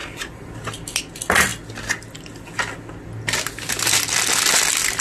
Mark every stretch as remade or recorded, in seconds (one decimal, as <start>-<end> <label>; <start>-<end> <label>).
0.0-5.0 recorded